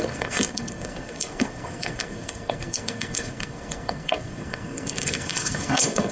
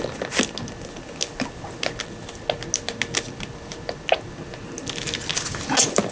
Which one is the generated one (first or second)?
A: first